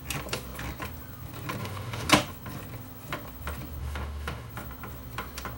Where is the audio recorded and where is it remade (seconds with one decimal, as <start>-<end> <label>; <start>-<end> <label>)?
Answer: 0.0-1.6 recorded; 1.6-2.1 remade; 2.1-3.8 recorded; 3.8-4.5 remade; 4.5-5.6 recorded